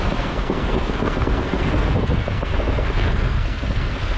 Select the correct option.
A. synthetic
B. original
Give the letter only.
A